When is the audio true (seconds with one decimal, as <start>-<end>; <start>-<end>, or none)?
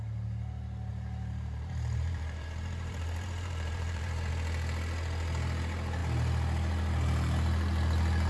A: 0.0-0.9; 4.3-8.3